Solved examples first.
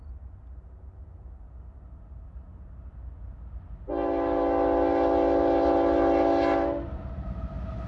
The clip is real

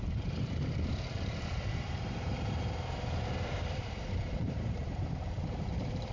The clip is fake